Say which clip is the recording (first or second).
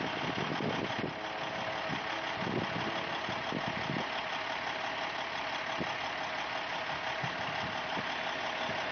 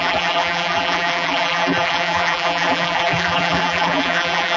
first